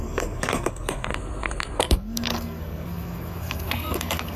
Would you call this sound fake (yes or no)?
yes